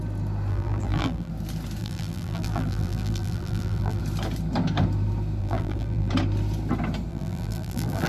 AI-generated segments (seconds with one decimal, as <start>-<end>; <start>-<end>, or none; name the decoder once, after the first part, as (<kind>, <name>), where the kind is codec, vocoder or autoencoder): 0.5-1.3 (vocoder, BigVGAN v2); 1.8-4.0; 5.4-6.1; 7.1-8.1